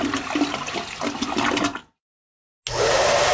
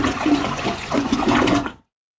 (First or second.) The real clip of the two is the first